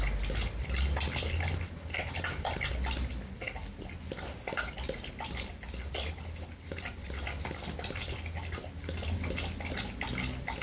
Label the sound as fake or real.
real